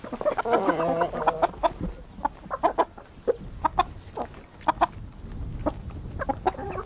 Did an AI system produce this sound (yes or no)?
no